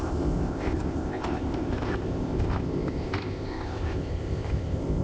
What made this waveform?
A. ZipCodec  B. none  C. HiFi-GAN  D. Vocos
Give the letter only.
A